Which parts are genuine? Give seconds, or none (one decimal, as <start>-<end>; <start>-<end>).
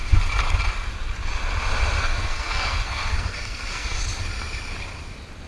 0.0-2.0; 4.0-5.5